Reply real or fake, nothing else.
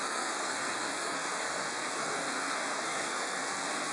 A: fake